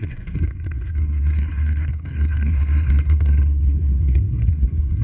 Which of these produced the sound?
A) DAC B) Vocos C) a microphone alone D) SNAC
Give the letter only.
D